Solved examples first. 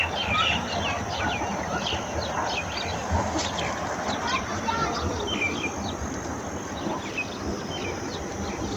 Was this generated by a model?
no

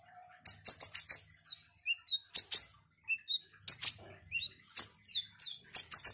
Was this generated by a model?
no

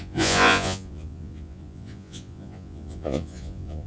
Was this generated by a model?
yes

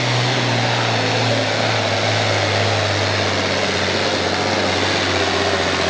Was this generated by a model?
no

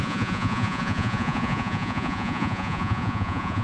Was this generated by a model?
yes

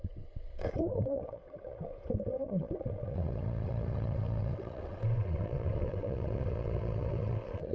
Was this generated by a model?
yes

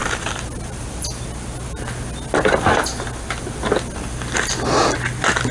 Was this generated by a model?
no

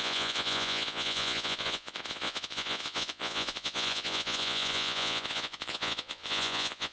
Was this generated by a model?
yes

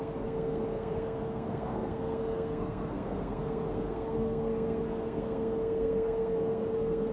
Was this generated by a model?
yes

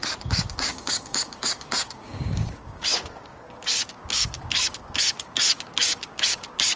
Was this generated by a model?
yes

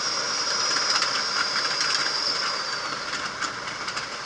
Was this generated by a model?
no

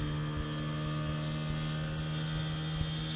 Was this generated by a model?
no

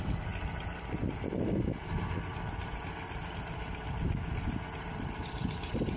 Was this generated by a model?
no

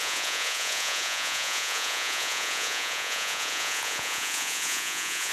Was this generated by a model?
yes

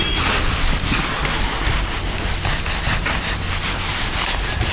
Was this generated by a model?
no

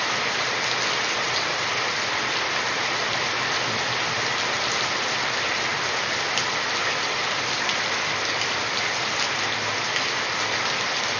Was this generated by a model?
no